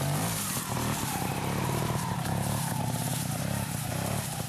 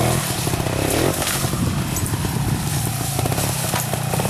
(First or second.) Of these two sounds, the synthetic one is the first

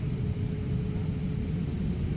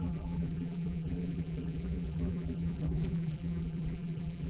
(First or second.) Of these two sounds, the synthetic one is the second